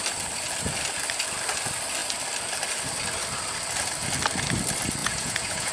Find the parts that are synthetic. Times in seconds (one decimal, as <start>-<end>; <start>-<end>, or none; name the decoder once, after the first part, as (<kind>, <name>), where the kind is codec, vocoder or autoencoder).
5.0-5.7 (vocoder, Vocos)